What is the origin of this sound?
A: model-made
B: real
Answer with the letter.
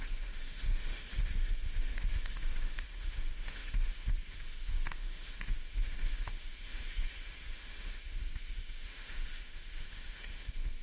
A